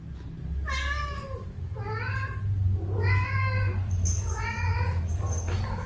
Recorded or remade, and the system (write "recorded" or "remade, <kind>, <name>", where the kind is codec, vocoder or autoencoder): recorded